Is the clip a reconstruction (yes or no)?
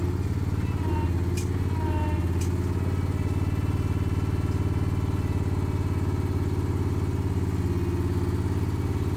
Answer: no